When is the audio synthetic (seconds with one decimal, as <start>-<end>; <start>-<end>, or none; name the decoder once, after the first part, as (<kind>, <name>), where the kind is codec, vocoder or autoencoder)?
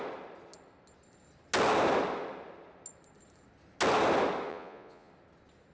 4.5-5.1 (vocoder, Vocos)